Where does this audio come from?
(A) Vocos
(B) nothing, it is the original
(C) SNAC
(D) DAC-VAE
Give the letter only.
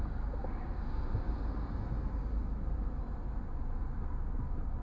B